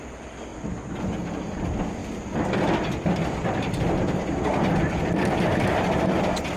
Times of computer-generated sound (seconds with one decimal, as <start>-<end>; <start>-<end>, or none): 2.0-5.6